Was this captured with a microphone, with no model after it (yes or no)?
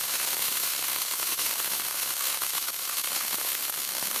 no